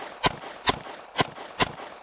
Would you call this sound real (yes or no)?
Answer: yes